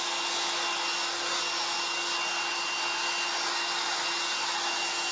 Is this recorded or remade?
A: recorded